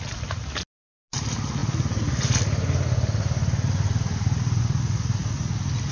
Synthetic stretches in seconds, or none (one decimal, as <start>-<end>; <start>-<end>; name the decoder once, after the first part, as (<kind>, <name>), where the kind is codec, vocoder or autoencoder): none